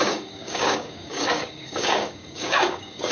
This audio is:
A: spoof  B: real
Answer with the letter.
A